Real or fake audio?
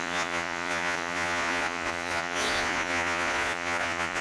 fake